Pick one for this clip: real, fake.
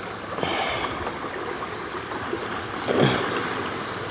real